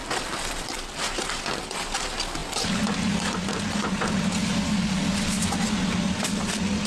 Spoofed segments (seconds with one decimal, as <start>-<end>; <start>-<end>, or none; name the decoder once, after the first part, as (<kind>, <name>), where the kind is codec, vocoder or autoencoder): none